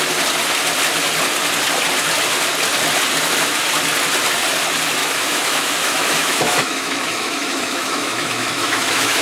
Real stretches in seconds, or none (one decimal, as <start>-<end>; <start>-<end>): 0.0-5.0